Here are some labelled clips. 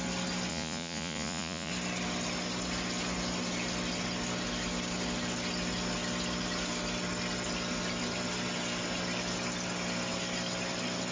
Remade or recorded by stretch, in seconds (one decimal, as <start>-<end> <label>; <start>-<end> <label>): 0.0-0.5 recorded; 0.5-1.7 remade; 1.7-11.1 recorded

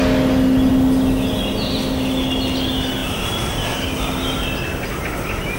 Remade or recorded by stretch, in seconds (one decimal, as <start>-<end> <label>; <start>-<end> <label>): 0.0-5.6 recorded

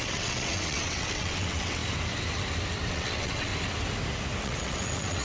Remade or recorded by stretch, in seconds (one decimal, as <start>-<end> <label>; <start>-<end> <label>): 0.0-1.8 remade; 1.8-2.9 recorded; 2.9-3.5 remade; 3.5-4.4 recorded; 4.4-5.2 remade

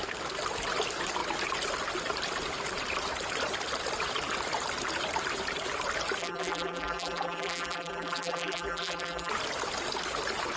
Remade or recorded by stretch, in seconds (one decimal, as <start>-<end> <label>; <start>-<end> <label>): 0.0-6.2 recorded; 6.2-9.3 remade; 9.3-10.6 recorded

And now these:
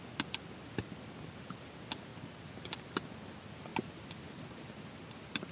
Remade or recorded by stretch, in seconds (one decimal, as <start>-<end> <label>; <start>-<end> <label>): 0.0-3.7 recorded; 3.7-5.5 remade

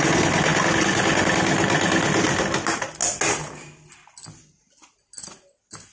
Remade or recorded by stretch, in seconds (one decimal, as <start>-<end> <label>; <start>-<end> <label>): 0.0-5.9 recorded